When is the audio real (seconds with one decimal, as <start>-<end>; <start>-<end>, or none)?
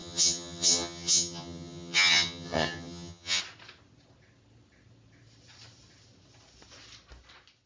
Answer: 3.4-7.7